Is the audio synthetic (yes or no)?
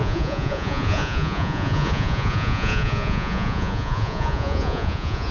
yes